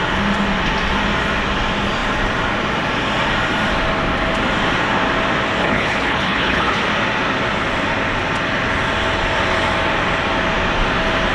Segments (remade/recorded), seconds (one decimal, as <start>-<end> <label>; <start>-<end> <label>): 0.0-5.6 recorded; 5.6-6.8 remade; 6.8-11.3 recorded